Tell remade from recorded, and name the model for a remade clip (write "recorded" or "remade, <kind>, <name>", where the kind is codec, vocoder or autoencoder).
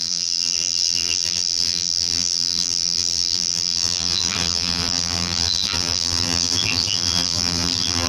remade, vocoder, BigVGAN v2